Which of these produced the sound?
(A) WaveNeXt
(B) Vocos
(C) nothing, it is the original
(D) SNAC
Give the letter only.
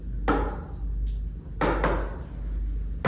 C